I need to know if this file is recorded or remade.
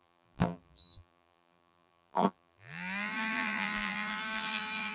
remade